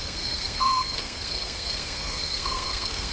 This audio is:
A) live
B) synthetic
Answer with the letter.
B